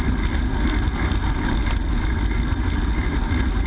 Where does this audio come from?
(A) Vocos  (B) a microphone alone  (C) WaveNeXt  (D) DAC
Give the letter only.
B